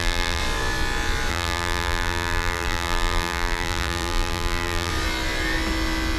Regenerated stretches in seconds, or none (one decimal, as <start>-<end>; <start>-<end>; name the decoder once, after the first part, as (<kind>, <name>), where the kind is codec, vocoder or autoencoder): 0.0-0.4 (vocoder, BigVGAN v2); 1.3-4.9